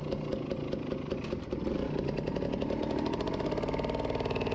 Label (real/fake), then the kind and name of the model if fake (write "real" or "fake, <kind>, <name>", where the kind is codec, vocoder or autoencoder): real